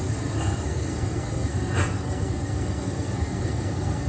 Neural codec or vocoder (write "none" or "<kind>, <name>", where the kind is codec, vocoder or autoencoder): codec, SNAC